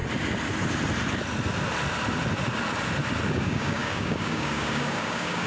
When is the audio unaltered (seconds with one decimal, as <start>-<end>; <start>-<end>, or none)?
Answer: 0.0-3.3